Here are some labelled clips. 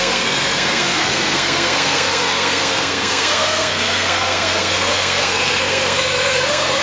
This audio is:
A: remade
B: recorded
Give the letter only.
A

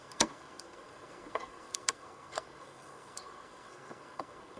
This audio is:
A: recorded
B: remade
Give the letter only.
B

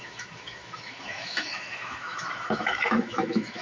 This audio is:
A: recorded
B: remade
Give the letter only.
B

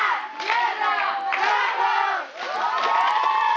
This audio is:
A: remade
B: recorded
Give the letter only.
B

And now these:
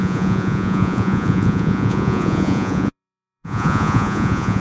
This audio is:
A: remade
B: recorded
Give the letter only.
A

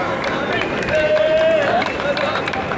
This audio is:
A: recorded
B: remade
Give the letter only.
A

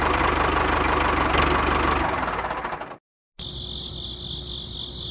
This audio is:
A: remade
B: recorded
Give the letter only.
B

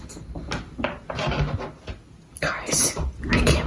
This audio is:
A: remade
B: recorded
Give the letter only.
B